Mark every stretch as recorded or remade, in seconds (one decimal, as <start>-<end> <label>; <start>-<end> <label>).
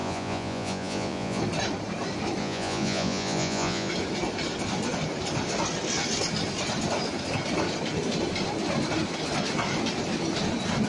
0.0-1.4 remade; 1.4-2.4 recorded; 2.4-3.9 remade; 3.9-10.9 recorded